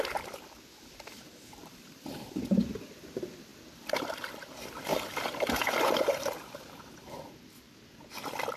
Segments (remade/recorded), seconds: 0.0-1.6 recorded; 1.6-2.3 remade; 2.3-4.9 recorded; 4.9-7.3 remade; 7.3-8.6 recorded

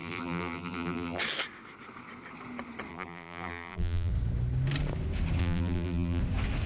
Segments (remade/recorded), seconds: 0.0-1.2 remade; 1.2-2.9 recorded; 2.9-4.1 remade; 4.1-5.4 recorded; 5.4-6.2 remade; 6.2-6.7 recorded

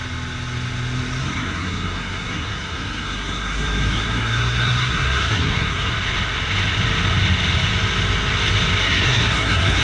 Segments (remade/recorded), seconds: 0.0-1.2 recorded; 1.2-5.9 remade; 5.9-8.8 recorded; 8.8-9.8 remade

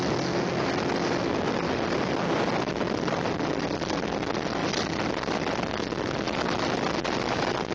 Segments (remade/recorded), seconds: 0.0-7.7 recorded

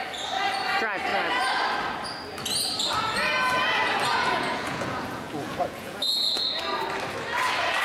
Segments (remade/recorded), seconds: 0.0-4.1 recorded; 4.1-6.6 remade; 6.6-7.8 recorded

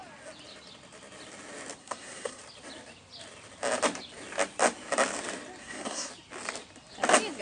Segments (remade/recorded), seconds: 0.0-1.8 recorded; 1.8-2.4 remade; 2.4-5.6 recorded; 5.6-6.1 remade; 6.1-7.4 recorded

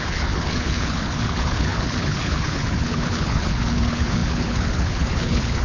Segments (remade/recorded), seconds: 0.0-5.6 remade

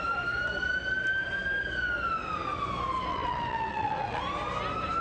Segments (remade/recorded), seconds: 0.0-3.1 recorded; 3.1-4.2 remade; 4.2-5.0 recorded